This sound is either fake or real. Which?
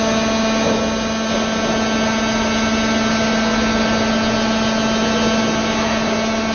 real